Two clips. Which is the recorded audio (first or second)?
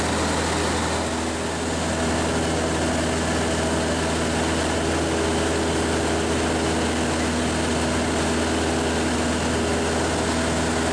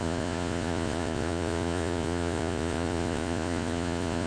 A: first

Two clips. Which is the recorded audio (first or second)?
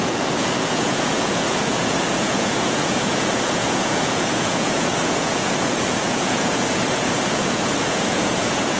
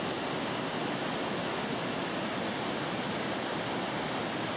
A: second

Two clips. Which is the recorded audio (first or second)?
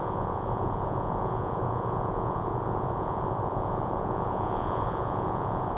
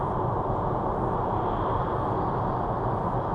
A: second